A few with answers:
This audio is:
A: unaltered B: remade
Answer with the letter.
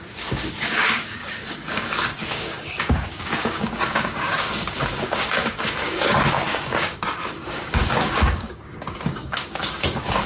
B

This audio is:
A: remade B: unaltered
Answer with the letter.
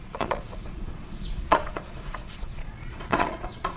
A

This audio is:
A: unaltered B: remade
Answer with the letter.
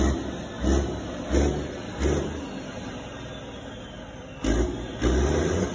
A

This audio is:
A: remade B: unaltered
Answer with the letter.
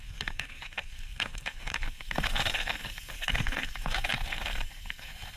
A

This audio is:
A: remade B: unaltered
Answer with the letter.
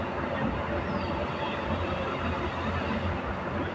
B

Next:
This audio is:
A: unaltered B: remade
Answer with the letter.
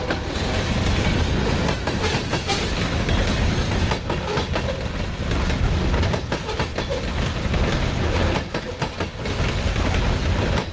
A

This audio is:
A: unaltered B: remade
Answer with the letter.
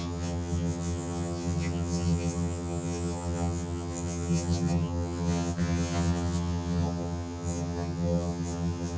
B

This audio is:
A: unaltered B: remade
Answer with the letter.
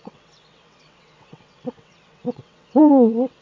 B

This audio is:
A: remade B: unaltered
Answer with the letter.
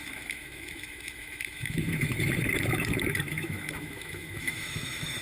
A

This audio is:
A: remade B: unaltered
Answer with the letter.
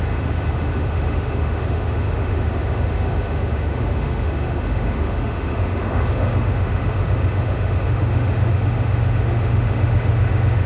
A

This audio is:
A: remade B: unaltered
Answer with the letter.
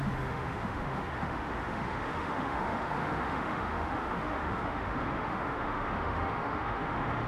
A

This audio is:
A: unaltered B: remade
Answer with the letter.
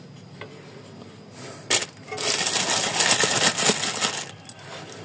A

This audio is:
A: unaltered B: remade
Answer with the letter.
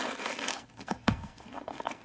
B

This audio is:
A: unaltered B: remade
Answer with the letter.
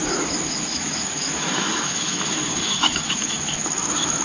B